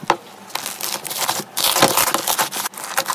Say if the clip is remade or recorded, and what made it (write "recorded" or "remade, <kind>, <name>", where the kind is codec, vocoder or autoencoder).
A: recorded